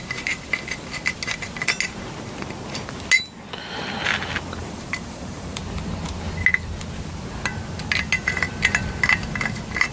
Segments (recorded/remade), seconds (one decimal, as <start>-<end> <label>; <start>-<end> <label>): 0.0-4.6 recorded; 4.6-5.6 remade; 5.6-9.9 recorded